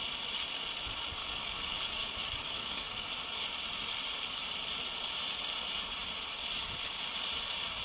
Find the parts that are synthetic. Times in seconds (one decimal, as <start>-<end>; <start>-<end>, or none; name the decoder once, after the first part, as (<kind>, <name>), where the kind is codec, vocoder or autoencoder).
1.2-3.1 (codec, DAC)